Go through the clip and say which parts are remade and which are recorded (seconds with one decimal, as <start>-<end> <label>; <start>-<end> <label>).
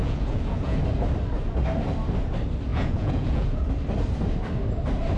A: 0.0-0.8 remade; 0.8-2.7 recorded; 2.7-3.7 remade; 3.7-5.2 recorded